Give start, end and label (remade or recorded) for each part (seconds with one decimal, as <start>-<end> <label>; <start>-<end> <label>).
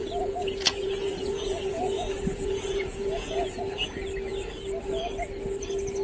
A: 0.0-3.6 remade; 3.6-6.0 recorded